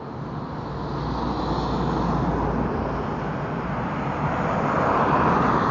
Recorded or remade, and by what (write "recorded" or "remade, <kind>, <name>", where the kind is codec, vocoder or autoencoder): recorded